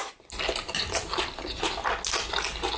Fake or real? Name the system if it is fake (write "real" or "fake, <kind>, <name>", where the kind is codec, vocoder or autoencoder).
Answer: real